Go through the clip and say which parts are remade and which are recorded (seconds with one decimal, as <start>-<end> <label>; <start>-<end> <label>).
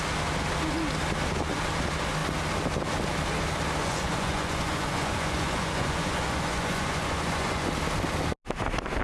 0.0-3.8 recorded; 3.8-7.7 remade; 7.7-9.0 recorded